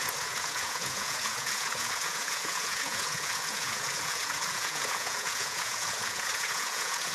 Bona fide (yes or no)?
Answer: no